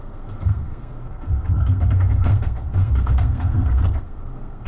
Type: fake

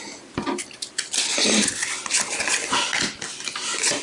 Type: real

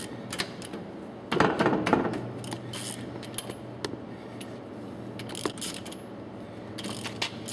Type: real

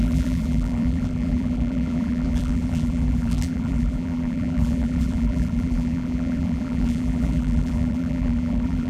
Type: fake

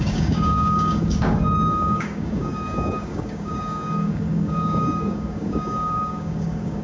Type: fake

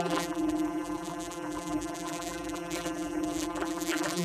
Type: fake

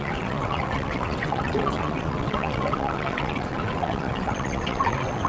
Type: fake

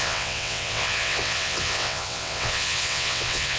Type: fake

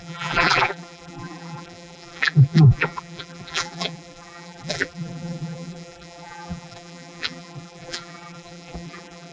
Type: fake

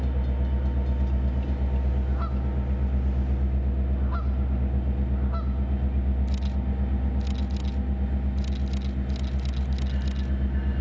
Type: real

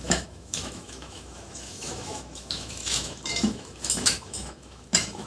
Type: fake